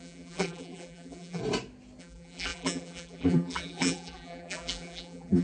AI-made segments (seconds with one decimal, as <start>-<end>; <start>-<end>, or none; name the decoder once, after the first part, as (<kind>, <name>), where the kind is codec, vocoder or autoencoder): 0.0-1.4 (vocoder, BigVGAN v2); 2.0-5.4